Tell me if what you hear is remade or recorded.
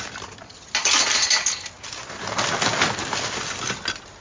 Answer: recorded